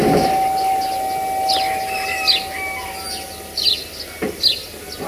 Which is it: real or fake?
real